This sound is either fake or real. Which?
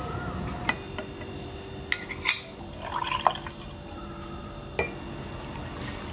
real